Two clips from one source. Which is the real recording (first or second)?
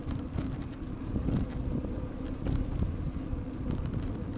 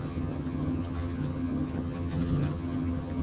first